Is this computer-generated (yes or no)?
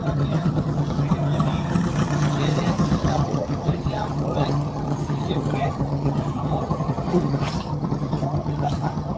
yes